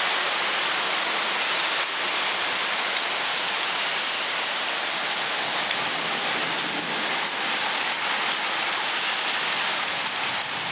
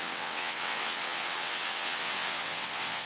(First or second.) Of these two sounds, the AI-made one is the second